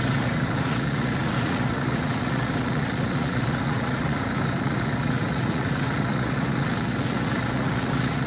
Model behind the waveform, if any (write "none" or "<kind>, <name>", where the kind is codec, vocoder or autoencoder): vocoder, Vocos